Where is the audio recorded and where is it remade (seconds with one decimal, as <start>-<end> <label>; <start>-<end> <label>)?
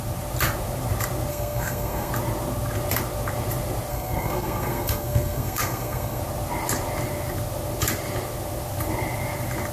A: 0.0-1.3 recorded; 1.3-2.1 remade; 2.1-3.9 recorded; 3.9-6.2 remade; 6.2-9.7 recorded